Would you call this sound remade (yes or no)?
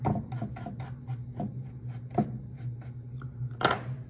no